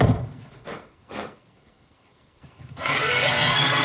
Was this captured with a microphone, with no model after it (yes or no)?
no